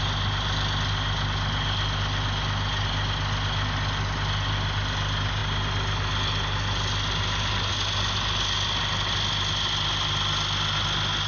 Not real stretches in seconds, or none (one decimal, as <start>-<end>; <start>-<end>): none